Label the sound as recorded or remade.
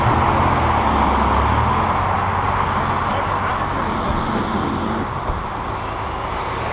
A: recorded